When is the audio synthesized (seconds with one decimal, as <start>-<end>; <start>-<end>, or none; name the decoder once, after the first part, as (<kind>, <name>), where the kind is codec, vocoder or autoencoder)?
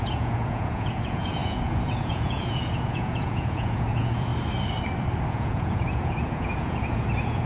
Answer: 0.0-4.3 (vocoder, Vocos); 5.3-7.5